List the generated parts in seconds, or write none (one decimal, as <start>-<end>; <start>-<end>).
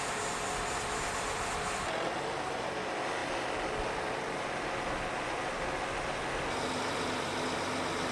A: none